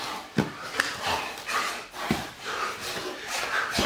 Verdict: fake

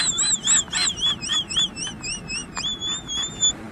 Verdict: real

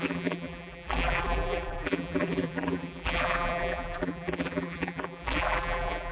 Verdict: fake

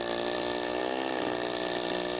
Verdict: fake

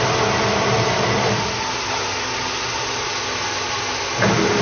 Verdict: real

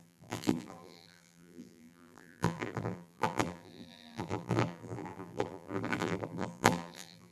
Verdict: fake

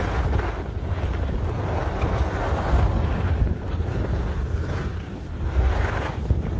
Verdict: real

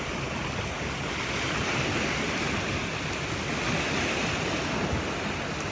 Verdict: real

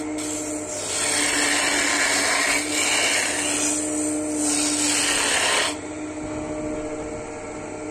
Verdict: real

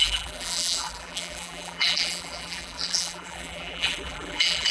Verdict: fake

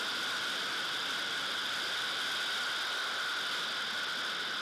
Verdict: real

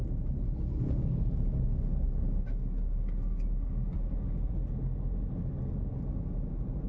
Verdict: real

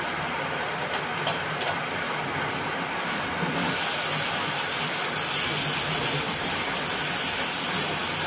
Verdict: real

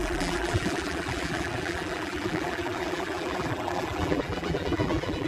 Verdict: fake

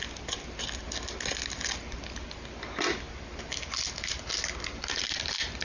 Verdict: real